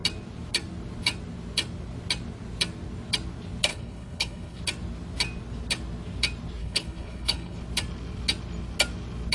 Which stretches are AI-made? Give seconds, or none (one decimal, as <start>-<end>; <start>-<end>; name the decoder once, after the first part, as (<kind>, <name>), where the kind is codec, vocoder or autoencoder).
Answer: 3.7-4.6 (codec, HILCodec); 6.6-7.6